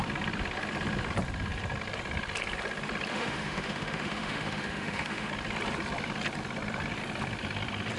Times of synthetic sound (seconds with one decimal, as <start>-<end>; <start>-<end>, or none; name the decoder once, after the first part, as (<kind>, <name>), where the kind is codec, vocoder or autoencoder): 3.1-5.3 (autoencoder, DAC-VAE)